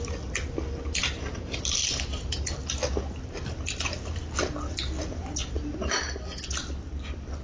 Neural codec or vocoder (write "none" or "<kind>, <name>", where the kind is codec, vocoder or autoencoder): none